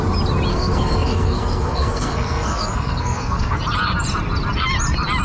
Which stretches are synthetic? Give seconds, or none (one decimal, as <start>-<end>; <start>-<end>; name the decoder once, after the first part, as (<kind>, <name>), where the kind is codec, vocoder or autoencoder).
0.5-3.6 (codec, SNAC)